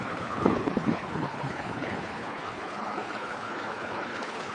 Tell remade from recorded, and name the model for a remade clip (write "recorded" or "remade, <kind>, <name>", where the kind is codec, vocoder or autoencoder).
remade, codec, HILCodec